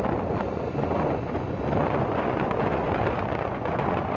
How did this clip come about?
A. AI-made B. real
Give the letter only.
A